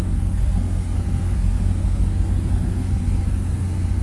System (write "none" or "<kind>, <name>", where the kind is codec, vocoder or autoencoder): codec, SNAC